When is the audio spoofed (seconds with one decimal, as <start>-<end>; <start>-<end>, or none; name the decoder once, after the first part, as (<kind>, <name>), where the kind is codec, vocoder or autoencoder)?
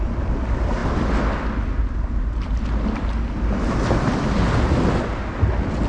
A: none